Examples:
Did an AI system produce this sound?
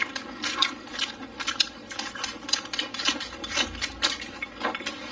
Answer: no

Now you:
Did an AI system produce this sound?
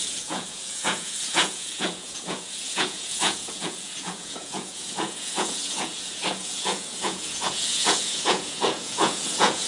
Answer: yes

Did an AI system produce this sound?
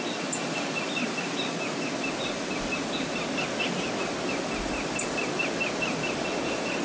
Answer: no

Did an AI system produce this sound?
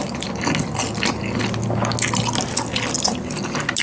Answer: no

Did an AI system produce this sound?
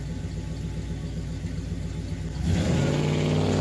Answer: no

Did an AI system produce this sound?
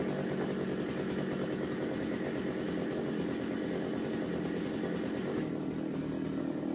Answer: no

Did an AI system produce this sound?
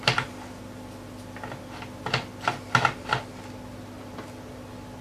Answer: no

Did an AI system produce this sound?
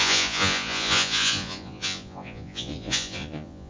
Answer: yes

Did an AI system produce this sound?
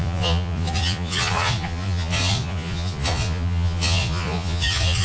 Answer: yes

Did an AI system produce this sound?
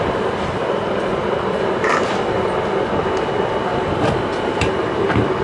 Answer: no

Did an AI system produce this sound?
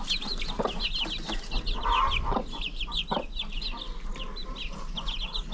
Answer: no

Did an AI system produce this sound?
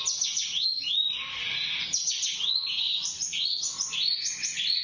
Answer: no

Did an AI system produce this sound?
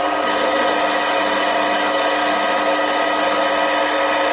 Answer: no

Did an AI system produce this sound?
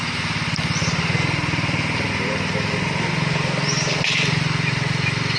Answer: no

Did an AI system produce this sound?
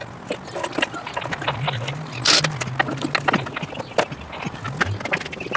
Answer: no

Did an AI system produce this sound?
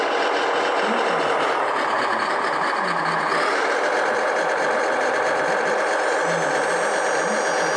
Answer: no